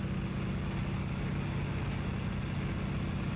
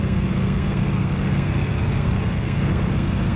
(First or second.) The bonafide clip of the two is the first